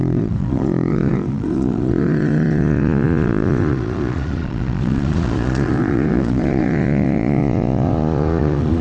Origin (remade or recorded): remade